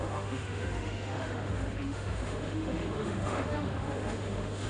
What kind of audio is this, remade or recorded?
remade